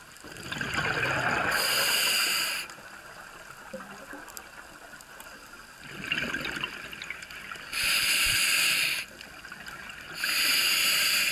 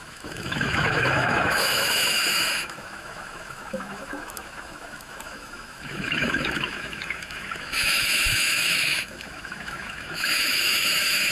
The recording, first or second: first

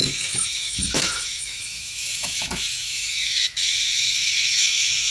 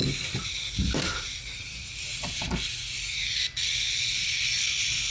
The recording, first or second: second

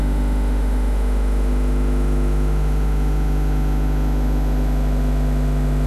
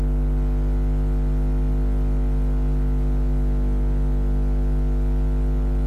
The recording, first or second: second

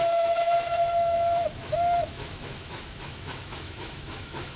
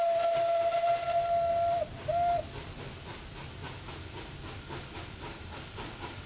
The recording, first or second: second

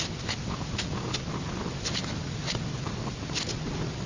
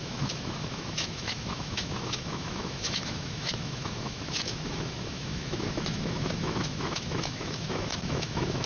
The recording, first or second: first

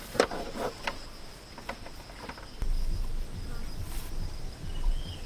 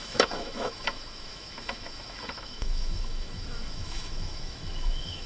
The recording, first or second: first